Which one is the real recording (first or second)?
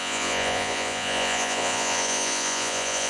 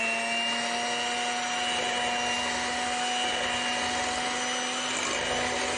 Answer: second